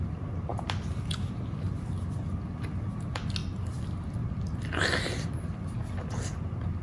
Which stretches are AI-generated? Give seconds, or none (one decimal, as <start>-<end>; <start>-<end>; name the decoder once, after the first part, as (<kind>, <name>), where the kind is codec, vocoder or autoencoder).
none